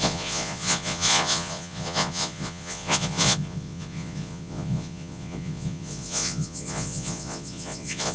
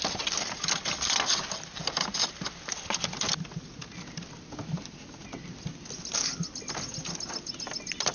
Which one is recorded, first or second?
second